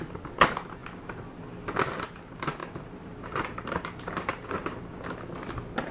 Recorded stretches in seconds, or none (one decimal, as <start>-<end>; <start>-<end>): 0.0-2.6; 4.9-5.9

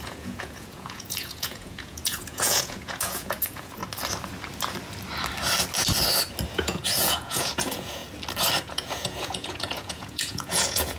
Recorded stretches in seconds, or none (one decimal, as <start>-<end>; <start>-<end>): 3.8-6.5; 8.0-8.7

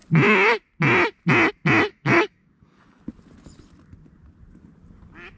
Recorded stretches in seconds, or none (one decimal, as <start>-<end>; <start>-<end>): 0.0-1.9; 3.0-5.4

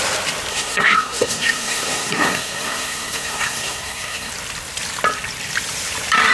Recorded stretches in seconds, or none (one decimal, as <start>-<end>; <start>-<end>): 0.0-0.5; 4.3-6.3

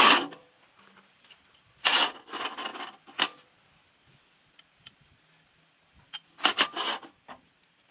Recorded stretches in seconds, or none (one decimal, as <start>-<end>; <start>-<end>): 0.0-0.4; 2.0-7.9